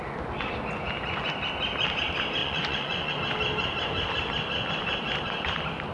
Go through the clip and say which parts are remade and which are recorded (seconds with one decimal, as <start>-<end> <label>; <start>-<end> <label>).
0.0-2.4 recorded; 2.4-3.1 remade; 3.1-5.9 recorded